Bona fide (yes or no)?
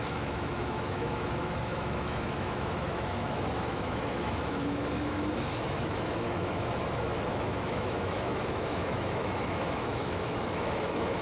no